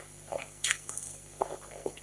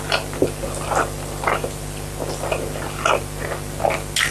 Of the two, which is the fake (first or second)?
first